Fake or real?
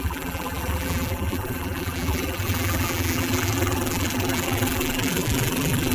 fake